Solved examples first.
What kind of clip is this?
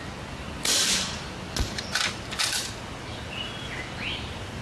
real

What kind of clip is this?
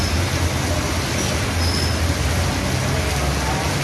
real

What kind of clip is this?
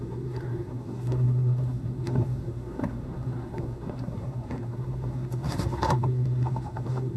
fake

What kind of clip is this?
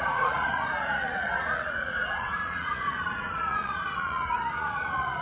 fake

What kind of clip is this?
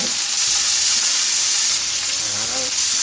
real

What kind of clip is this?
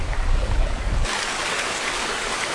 fake